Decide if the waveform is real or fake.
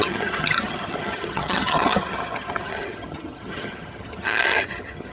fake